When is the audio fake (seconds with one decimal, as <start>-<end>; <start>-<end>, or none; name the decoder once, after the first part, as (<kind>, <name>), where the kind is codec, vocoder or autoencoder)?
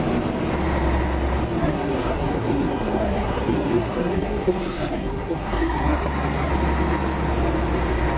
1.6-6.5 (codec, SNAC)